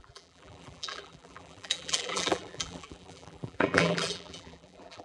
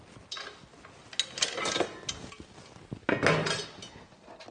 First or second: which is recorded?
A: second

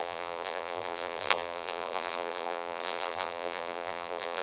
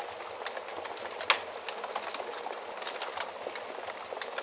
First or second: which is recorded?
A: second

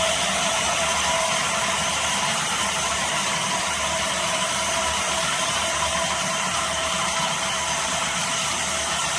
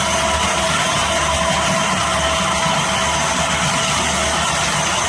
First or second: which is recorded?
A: second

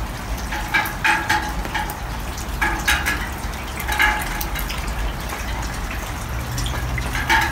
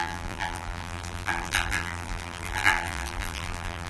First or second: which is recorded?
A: first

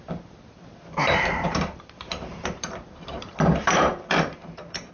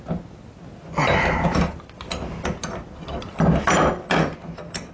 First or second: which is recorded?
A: second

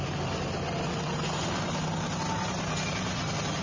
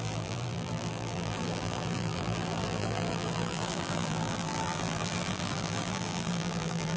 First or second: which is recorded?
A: first